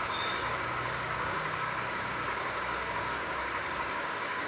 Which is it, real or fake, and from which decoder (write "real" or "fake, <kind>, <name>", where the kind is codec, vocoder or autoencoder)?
fake, codec, DAC